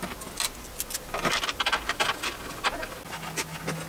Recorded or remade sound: recorded